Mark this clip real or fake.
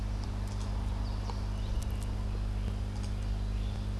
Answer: real